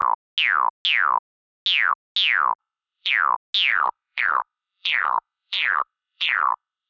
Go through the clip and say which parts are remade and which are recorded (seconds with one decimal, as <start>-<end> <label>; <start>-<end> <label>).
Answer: 0.0-2.6 recorded; 2.6-3.1 remade; 3.1-3.7 recorded; 3.7-6.9 remade